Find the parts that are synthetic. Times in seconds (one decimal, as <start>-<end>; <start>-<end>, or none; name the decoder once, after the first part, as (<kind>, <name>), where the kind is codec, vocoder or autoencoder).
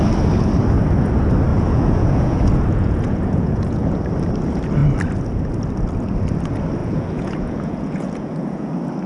1.5-4.0 (vocoder, Vocos); 6.8-8.7